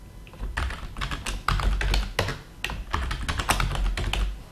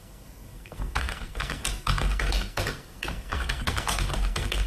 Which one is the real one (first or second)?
first